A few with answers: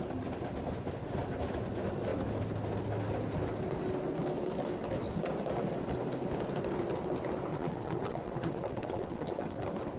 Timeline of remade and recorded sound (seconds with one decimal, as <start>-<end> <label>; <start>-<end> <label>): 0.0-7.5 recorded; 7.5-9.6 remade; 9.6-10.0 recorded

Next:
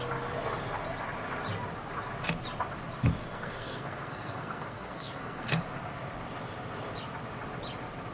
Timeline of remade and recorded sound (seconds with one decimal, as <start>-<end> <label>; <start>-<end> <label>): 0.0-3.2 recorded; 3.2-5.6 remade; 5.6-8.1 recorded

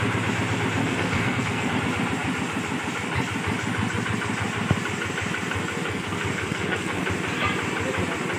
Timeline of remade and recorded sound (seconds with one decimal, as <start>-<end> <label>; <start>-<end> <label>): 0.0-0.8 recorded; 0.8-1.8 remade; 1.8-5.9 recorded; 5.9-7.0 remade; 7.0-8.4 recorded

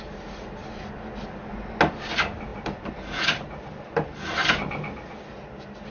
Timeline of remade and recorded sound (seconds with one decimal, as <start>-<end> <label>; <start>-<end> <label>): 0.0-2.5 recorded; 2.5-5.9 remade

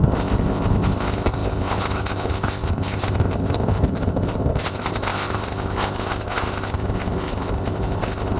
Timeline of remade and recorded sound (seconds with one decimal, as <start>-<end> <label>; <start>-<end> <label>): 0.0-8.4 remade